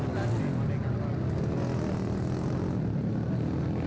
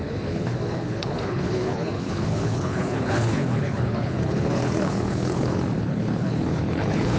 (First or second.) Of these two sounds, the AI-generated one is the second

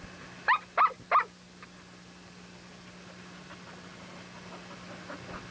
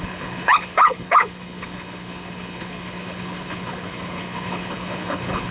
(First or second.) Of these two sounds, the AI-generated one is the second